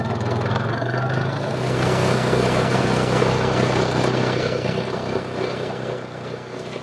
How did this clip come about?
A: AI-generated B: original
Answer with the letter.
A